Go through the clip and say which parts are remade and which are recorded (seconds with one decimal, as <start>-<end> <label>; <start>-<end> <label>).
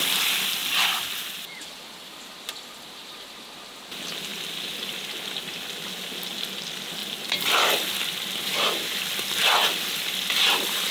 0.0-0.6 recorded; 0.6-3.1 remade; 3.1-4.3 recorded; 4.3-4.9 remade; 4.9-10.9 recorded